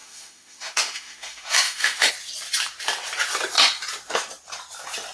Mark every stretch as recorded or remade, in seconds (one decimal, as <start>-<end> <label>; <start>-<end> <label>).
0.0-2.1 remade; 2.1-5.1 recorded